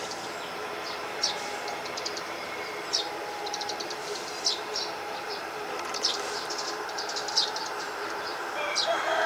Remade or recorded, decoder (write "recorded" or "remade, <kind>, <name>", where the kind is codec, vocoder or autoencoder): remade, vocoder, BigVGAN v2